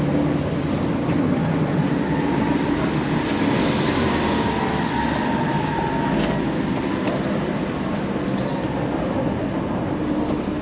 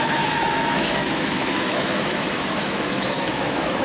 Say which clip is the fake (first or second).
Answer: second